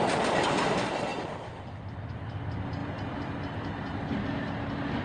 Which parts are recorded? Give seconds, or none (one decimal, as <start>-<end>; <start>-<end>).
0.0-5.0